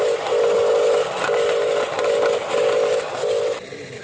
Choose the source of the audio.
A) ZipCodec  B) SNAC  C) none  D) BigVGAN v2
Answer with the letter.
C